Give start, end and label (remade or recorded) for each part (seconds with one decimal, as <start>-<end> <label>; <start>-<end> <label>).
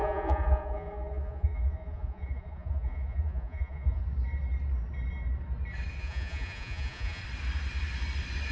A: 0.0-4.0 remade; 4.0-6.0 recorded; 6.0-7.2 remade; 7.2-8.5 recorded